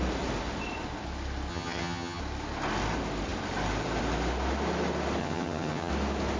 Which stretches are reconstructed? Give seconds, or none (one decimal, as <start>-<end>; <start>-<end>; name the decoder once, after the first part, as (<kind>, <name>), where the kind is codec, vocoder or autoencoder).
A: 1.5-2.2 (vocoder, HiFi-GAN); 5.2-5.9